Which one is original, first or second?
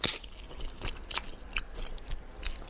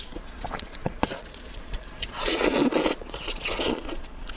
first